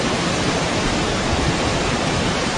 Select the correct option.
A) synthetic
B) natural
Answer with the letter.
A